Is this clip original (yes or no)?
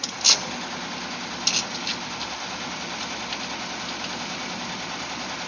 yes